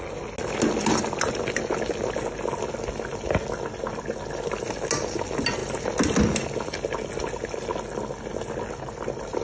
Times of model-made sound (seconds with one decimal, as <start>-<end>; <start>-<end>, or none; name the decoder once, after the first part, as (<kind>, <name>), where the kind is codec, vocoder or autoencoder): none